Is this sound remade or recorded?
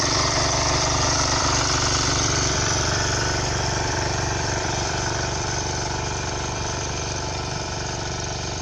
remade